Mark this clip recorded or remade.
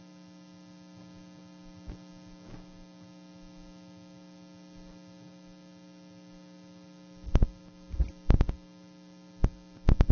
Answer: recorded